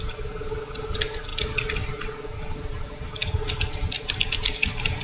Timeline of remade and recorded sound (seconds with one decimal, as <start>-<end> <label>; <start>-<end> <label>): 0.0-5.0 recorded